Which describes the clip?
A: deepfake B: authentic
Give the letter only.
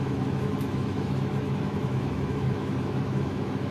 A